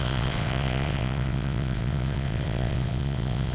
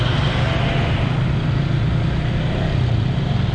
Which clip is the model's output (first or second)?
first